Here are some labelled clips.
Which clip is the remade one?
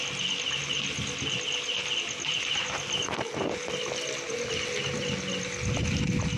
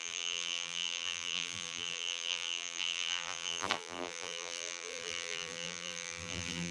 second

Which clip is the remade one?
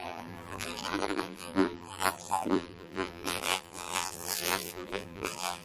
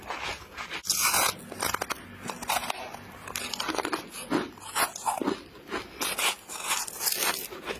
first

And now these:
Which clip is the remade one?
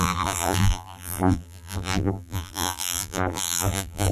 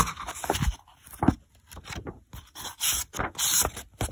first